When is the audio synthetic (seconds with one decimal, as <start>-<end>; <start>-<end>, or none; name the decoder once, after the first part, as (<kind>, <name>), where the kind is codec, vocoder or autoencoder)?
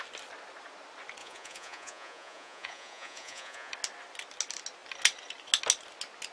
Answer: 1.2-3.7 (vocoder, Vocos)